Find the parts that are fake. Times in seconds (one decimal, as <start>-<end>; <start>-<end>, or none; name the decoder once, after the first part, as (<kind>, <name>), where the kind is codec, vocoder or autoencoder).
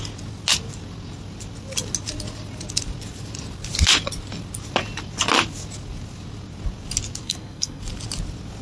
7.2-7.8 (codec, SNAC)